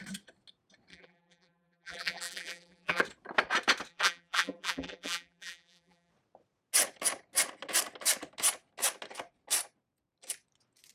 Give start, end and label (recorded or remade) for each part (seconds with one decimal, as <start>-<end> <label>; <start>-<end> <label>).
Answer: 0.0-0.9 recorded; 0.9-3.0 remade; 3.0-3.9 recorded; 3.9-6.1 remade; 6.1-10.9 recorded

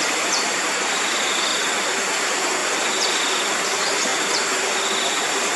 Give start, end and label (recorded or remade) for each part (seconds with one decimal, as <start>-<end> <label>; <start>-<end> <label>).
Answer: 0.0-1.5 remade; 1.5-2.1 recorded; 2.1-2.6 remade; 2.6-3.3 recorded; 3.3-5.6 remade

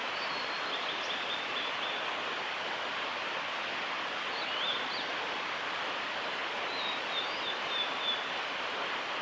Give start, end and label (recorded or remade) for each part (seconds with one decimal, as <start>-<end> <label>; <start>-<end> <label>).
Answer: 0.0-6.4 remade; 6.4-7.5 recorded; 7.5-9.2 remade

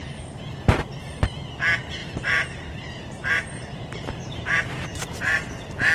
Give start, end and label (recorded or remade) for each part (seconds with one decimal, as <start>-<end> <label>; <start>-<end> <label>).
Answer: 0.0-2.0 recorded; 2.0-5.5 remade; 5.5-5.9 recorded

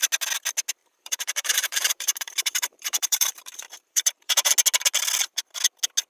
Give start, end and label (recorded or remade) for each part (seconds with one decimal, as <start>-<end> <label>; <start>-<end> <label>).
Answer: 0.0-0.8 recorded; 0.8-4.5 remade; 4.5-6.1 recorded